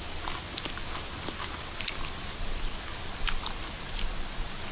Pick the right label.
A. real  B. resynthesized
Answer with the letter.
A